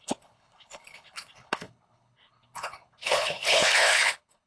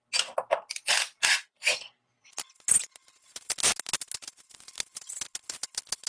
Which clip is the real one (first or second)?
second